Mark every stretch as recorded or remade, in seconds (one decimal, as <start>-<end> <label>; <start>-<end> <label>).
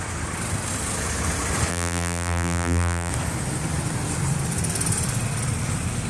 0.0-1.7 recorded; 1.7-3.1 remade; 3.1-6.1 recorded